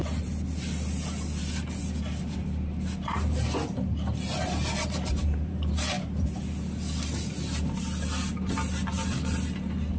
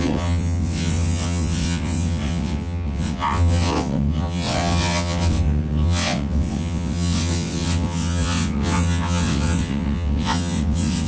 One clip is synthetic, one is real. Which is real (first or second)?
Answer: first